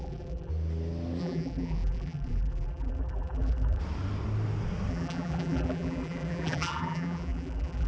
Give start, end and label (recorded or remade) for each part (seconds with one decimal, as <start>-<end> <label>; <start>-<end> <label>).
0.0-0.5 remade; 0.5-1.2 recorded; 1.2-3.8 remade; 3.8-4.9 recorded; 4.9-7.9 remade